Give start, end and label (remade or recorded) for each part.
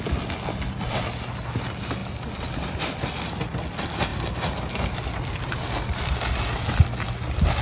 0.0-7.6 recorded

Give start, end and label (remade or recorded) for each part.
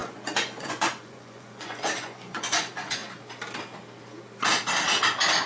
0.0-3.0 remade; 3.0-5.5 recorded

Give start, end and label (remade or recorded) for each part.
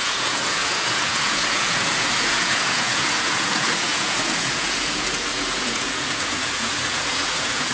0.0-7.7 remade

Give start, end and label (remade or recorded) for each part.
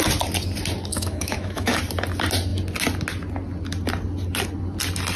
0.0-0.9 recorded; 0.9-1.8 remade; 1.8-5.2 recorded